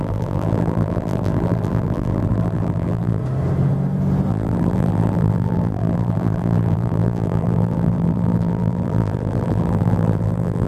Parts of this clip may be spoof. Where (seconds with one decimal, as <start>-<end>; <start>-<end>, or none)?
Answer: 0.0-3.2; 4.3-10.7